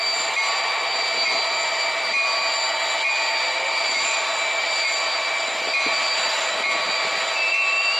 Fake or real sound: real